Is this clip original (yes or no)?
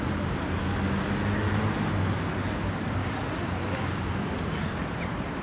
yes